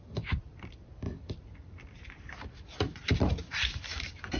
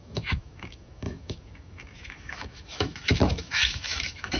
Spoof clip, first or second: second